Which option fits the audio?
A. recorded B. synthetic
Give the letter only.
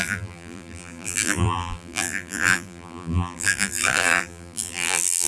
B